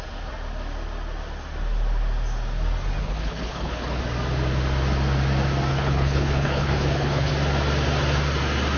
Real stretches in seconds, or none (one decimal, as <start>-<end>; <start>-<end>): 0.0-3.0; 4.0-5.7; 7.3-8.8